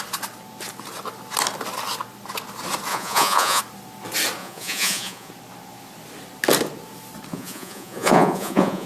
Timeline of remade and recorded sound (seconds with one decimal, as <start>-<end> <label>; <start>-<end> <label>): 0.0-2.9 recorded; 2.9-3.6 remade; 3.6-4.4 recorded; 4.4-5.3 remade; 5.3-7.3 recorded; 7.3-8.9 remade